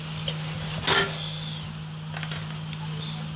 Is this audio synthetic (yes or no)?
no